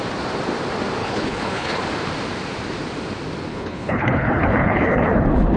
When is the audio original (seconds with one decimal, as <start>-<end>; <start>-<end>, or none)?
0.0-1.0; 1.8-3.5